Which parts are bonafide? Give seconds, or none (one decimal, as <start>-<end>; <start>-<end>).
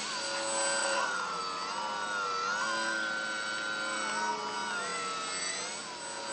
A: 0.0-0.8; 1.4-6.3